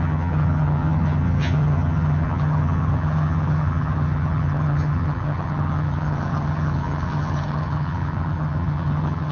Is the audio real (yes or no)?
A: no